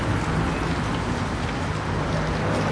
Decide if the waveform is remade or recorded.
recorded